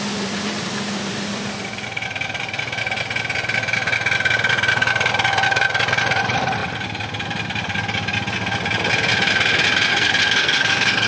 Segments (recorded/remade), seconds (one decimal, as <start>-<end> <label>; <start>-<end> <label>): 0.0-9.9 recorded; 9.9-11.1 remade